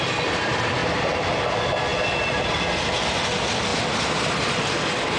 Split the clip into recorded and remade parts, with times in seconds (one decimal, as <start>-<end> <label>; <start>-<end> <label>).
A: 0.0-5.2 recorded